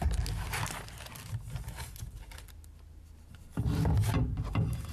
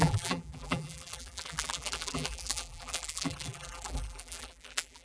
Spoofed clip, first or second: second